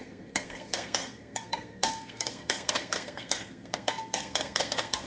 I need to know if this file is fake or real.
fake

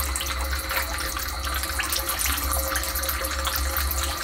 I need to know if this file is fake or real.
real